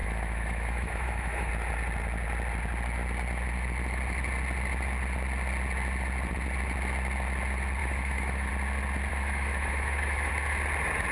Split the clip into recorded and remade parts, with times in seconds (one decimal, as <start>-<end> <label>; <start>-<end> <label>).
0.0-1.5 remade; 1.5-7.8 recorded; 7.8-8.5 remade; 8.5-9.1 recorded; 9.1-10.3 remade; 10.3-11.1 recorded